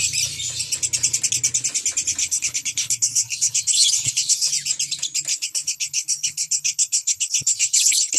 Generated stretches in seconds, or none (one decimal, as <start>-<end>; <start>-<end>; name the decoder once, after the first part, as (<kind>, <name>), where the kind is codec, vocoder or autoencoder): 2.2-4.5 (codec, HILCodec); 5.3-8.2